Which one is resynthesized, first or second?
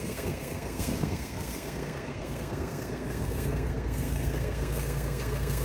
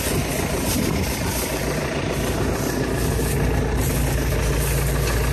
first